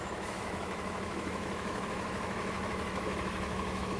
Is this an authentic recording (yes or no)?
no